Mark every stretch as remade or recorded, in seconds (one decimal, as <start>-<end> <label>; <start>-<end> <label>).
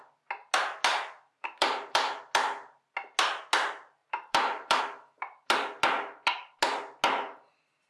0.0-0.9 recorded; 0.9-2.2 remade; 2.2-4.0 recorded; 4.0-4.8 remade; 4.8-7.9 recorded